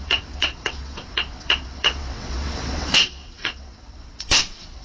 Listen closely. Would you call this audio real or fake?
fake